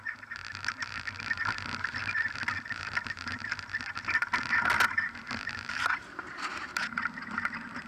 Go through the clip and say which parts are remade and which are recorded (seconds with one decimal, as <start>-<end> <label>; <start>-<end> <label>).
0.0-7.9 recorded